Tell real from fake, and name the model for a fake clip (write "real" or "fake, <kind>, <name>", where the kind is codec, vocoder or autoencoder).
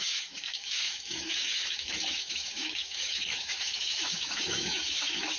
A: fake, autoencoder, DAC-VAE